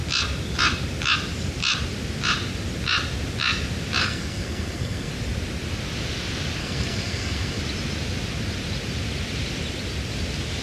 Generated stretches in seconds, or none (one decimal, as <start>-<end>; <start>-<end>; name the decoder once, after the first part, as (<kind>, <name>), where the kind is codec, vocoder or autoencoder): 4.0-5.1 (codec, SNAC); 6.6-7.6

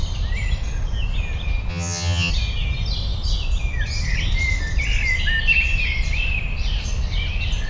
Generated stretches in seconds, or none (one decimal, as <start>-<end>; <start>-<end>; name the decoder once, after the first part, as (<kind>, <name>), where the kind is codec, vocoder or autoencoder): 1.7-2.3 (vocoder, HiFi-GAN)

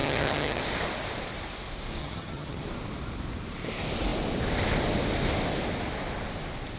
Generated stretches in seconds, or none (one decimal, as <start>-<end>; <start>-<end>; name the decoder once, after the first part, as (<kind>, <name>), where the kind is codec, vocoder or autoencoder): 0.0-0.6 (vocoder, HiFi-GAN); 2.0-2.6

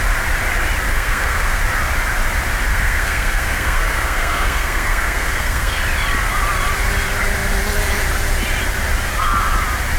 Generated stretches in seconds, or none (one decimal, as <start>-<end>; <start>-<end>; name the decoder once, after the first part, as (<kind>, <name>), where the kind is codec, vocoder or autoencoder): 0.9-1.6 (codec, SNAC); 2.7-5.8

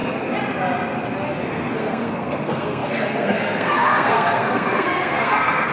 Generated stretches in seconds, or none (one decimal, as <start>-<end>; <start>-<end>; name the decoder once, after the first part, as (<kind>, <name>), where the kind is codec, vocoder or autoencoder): 1.3-5.7 (codec, SNAC)